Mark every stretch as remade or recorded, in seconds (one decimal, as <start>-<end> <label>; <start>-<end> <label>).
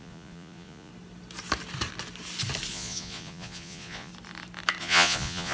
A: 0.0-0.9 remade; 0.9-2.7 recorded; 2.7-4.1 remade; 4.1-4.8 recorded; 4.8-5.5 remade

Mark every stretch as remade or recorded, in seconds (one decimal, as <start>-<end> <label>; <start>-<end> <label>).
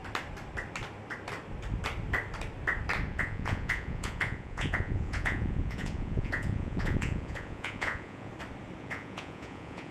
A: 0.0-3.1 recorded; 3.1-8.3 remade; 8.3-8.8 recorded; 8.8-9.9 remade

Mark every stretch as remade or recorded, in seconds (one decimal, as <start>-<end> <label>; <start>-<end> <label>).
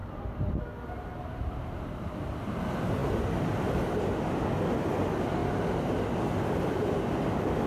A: 0.0-0.5 remade; 0.5-1.1 recorded; 1.1-2.2 remade; 2.2-7.7 recorded